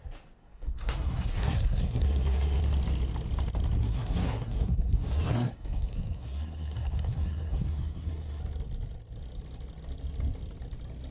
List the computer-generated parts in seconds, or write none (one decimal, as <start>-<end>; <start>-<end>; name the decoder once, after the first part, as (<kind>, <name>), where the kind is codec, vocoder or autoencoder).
0.4-2.6 (codec, SNAC); 3.8-8.4